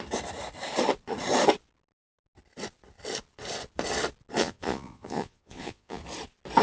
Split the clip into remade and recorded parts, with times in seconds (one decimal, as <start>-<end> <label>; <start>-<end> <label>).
0.0-4.4 recorded; 4.4-6.0 remade; 6.0-6.6 recorded